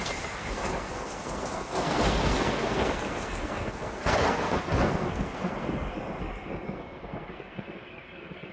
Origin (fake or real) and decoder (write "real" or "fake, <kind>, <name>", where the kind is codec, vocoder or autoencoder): fake, codec, SNAC